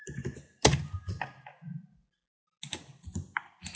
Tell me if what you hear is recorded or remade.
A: recorded